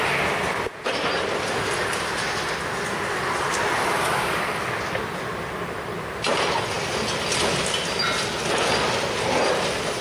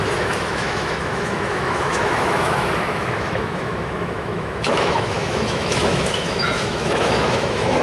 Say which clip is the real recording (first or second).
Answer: first